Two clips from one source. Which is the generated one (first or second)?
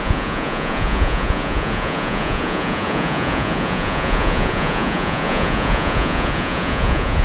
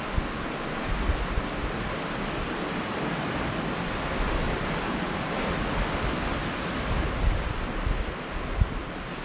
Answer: first